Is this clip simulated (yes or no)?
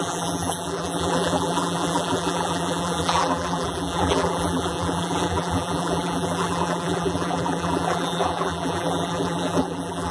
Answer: yes